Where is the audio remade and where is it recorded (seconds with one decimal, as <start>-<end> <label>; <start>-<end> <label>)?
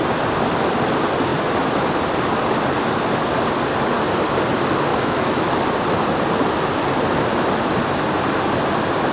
0.0-4.9 recorded; 4.9-5.5 remade; 5.5-9.1 recorded